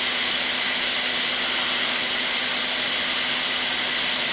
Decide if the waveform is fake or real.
real